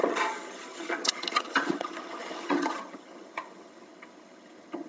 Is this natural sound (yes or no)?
no